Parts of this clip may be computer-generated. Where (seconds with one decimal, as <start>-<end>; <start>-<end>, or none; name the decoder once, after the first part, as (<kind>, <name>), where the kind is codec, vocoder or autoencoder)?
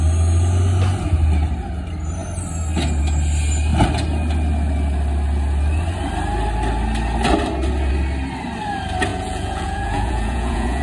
9.1-10.8 (vocoder, Vocos)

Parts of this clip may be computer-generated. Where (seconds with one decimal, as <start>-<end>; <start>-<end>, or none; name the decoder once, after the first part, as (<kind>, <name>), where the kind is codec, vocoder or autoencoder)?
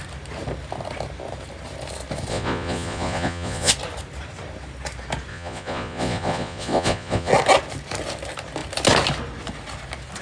2.3-3.7 (vocoder, Vocos); 5.3-7.3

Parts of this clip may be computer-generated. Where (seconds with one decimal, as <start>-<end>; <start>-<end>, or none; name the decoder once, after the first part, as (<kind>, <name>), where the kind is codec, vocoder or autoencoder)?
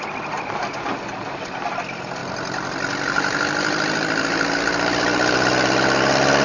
none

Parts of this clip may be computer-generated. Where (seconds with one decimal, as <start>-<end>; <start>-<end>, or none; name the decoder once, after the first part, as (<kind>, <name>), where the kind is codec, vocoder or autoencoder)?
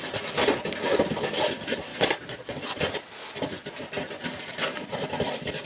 1.9-2.8 (vocoder, Vocos)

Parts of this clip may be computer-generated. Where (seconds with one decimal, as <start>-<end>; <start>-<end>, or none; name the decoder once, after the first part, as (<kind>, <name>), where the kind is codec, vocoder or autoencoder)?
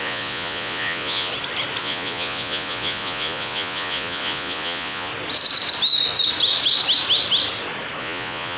0.0-1.3 (vocoder, Vocos); 1.8-5.1; 8.0-8.6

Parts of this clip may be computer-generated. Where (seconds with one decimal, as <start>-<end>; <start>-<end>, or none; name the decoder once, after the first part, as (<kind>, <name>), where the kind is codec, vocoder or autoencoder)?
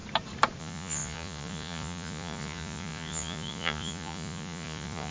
0.6-5.1 (vocoder, Vocos)